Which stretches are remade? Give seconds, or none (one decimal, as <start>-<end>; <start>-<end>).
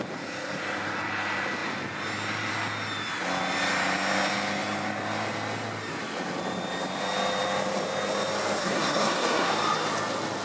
8.6-9.5